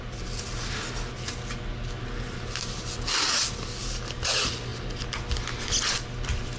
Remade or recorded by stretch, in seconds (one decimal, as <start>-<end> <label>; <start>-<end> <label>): 0.0-6.6 recorded